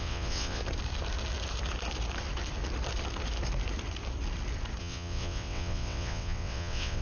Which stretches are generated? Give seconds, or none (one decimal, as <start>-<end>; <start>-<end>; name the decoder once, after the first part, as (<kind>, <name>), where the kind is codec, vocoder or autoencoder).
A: 0.0-0.6 (vocoder, WaveNeXt); 4.8-7.0